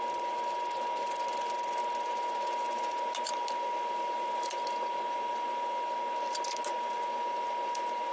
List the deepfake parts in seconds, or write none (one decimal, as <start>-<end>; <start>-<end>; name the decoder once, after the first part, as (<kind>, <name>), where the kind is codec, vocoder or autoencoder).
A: none